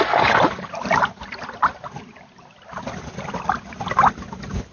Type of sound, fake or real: real